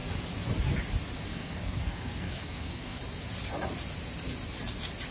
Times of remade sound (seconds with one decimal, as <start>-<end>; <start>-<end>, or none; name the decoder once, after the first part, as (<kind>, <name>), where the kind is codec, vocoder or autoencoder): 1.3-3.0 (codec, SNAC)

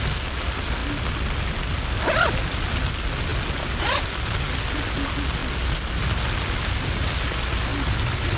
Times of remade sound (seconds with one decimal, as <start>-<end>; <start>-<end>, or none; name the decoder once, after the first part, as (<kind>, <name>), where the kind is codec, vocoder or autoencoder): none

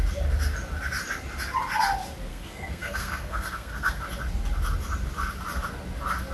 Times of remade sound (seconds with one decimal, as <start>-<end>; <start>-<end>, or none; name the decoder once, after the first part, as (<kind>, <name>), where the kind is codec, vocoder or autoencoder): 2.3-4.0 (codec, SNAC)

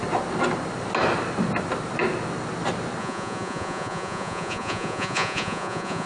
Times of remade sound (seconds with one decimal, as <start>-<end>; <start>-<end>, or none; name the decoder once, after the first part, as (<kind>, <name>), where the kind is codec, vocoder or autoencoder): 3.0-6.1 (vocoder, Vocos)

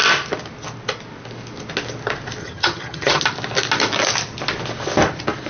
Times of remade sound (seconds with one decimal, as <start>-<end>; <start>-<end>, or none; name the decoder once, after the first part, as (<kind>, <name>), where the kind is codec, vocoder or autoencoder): 2.4-3.2 (vocoder, HiFi-GAN)